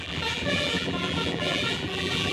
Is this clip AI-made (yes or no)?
yes